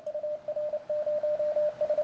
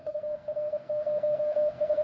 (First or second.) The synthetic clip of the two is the second